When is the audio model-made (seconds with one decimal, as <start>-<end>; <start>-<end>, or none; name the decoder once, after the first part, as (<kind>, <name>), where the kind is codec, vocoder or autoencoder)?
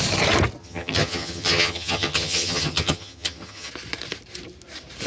0.6-3.7 (vocoder, HiFi-GAN)